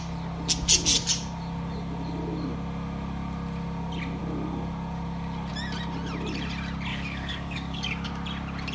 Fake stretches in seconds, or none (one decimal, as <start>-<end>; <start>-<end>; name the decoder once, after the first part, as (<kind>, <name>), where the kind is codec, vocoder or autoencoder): 6.9-8.1 (codec, DAC)